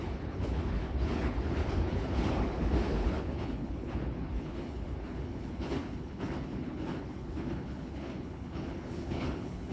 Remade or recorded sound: remade